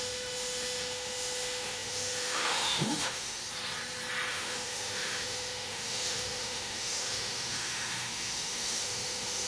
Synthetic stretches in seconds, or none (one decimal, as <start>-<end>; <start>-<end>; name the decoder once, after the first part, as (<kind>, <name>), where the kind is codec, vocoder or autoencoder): 0.0-3.4 (autoencoder, DAC-VAE); 4.3-9.5